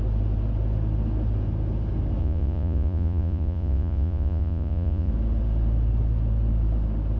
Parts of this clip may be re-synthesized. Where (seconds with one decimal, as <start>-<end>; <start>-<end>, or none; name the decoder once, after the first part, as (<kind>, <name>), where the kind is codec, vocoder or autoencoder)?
2.2-5.1 (vocoder, Vocos)